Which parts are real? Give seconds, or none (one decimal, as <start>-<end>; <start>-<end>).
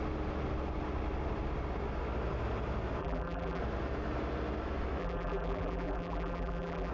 0.0-3.0; 3.6-5.0